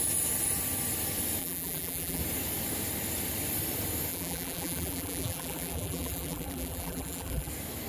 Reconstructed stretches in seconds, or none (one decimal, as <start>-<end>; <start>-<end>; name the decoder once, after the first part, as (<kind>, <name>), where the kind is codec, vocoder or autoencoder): 1.4-2.2 (vocoder, BigVGAN v2); 4.1-7.5